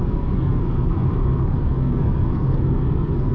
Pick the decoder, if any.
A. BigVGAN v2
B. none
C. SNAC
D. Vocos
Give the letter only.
C